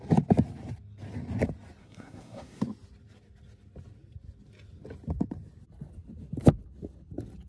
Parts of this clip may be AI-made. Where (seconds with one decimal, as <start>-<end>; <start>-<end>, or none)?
1.8-2.6